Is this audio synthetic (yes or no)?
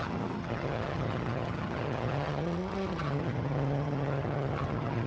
yes